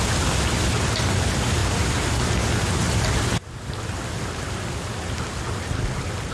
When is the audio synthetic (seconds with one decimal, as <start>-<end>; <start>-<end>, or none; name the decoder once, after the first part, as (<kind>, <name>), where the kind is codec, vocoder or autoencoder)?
none